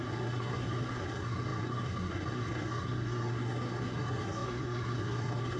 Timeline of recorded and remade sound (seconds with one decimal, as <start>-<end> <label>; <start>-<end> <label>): 0.0-5.6 remade